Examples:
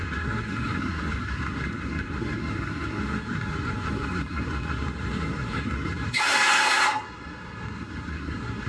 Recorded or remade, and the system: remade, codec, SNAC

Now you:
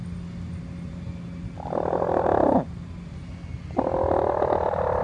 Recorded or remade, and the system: recorded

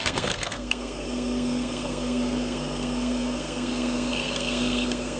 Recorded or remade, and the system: remade, codec, SNAC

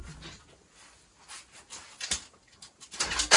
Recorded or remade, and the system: recorded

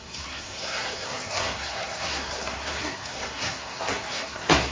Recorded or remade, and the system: remade, codec, SNAC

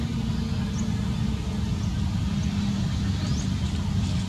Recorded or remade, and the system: recorded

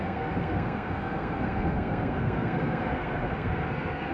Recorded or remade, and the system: remade, codec, SNAC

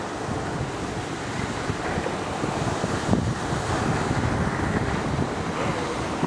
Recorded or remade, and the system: recorded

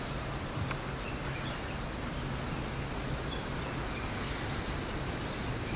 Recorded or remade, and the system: recorded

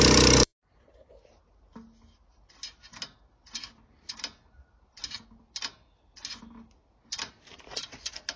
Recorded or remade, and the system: recorded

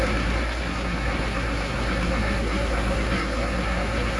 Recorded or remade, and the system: remade, codec, SNAC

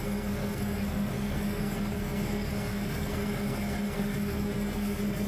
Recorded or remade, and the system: remade, codec, SNAC